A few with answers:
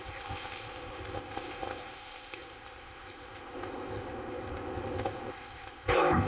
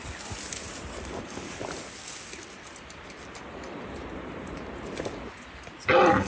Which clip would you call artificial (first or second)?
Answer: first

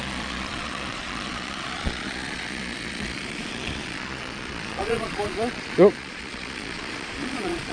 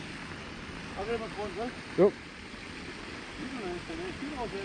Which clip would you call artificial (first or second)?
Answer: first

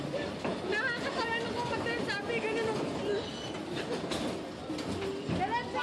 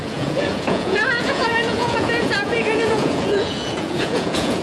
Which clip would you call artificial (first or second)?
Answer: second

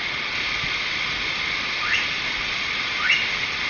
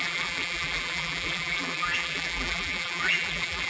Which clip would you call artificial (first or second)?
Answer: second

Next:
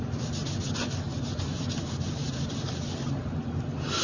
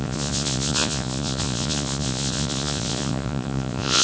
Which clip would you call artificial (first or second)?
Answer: second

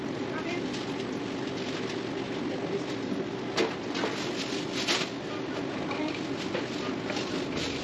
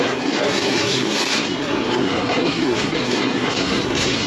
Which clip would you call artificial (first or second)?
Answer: second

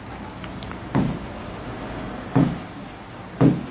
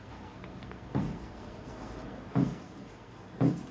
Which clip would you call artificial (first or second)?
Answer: second